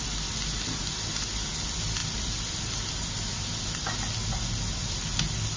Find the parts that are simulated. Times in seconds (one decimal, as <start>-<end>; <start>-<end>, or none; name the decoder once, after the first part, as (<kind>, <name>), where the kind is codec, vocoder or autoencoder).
none